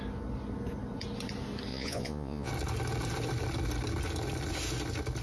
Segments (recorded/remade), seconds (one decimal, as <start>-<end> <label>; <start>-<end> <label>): 0.0-1.7 recorded; 1.7-2.5 remade; 2.5-5.2 recorded